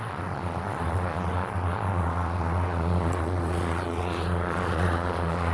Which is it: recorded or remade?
remade